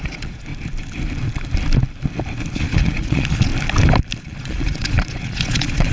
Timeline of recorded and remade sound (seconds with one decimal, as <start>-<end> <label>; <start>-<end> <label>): 0.0-0.5 remade; 0.5-2.6 recorded; 2.6-3.5 remade; 3.5-4.2 recorded; 4.2-5.9 remade